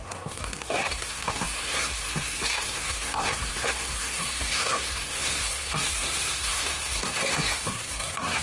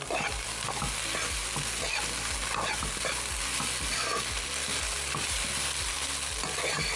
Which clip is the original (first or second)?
second